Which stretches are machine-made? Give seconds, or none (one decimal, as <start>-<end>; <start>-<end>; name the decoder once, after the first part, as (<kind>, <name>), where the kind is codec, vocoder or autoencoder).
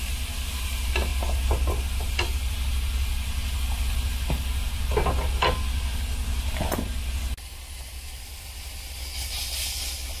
none